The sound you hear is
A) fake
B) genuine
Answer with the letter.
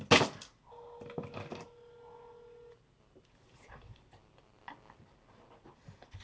B